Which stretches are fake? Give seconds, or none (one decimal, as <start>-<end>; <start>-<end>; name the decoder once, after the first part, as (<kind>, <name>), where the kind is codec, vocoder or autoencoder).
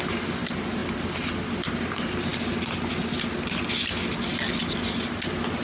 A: none